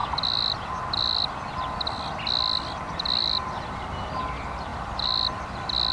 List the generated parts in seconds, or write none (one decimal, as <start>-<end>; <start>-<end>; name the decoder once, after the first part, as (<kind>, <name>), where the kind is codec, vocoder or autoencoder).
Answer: 0.0-1.3 (vocoder, BigVGAN v2); 3.2-4.2; 4.7-5.4